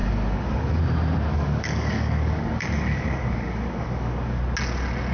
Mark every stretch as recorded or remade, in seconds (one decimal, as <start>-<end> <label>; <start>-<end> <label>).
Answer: 0.0-0.8 remade; 0.8-1.3 recorded; 1.3-4.4 remade; 4.4-5.1 recorded